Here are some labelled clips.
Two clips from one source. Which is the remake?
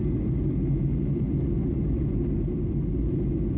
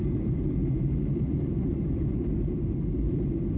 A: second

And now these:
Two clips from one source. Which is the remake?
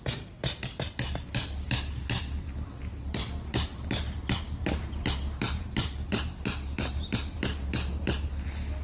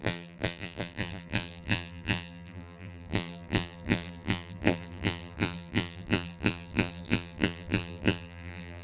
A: second